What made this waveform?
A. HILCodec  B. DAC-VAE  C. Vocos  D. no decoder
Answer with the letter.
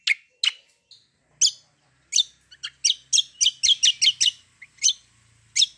D